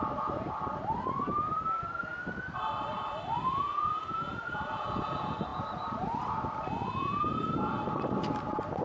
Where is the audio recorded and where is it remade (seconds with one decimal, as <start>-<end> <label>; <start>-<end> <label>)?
0.0-3.7 recorded; 3.7-4.3 remade; 4.3-8.8 recorded